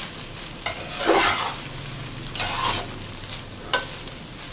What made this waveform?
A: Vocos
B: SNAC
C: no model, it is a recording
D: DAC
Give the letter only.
C